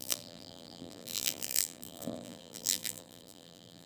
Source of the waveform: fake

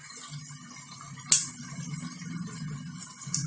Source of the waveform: real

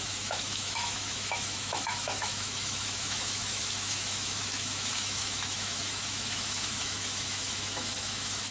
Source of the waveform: fake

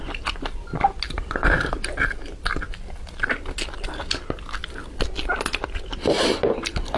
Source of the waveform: real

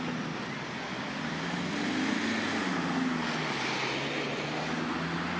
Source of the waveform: real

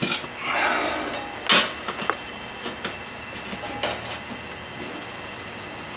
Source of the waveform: real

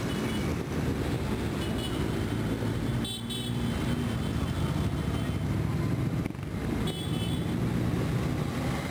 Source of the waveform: real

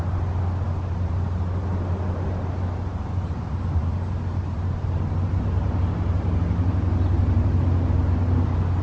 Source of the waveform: real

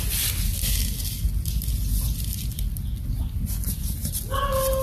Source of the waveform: real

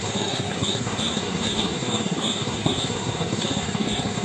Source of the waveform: fake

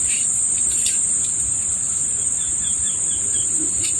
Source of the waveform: fake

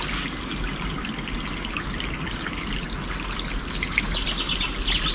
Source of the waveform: real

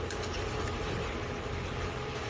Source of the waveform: real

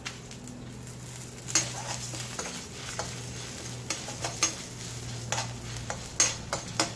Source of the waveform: real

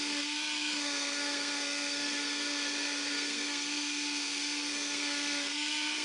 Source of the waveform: fake